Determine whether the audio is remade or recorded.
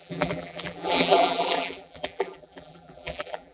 remade